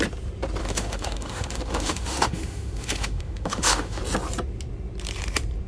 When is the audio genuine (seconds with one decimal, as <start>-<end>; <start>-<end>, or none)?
0.0-0.6; 4.0-5.7